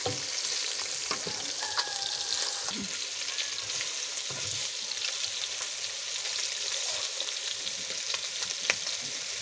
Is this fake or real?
real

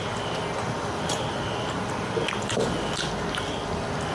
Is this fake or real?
real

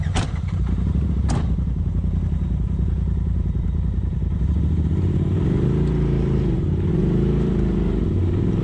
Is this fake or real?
fake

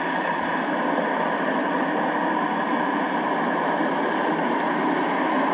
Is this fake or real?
real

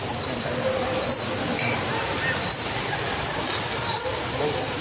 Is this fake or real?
real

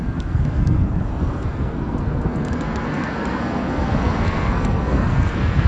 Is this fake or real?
fake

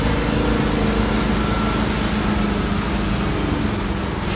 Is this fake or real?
real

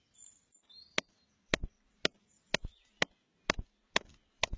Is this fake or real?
real